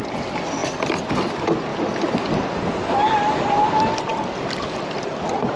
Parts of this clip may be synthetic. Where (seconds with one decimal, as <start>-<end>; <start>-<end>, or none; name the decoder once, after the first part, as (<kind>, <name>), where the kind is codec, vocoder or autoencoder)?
none